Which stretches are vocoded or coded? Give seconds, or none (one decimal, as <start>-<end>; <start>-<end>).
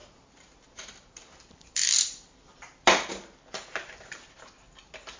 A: 0.0-3.1